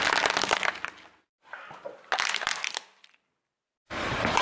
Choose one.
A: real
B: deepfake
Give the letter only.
A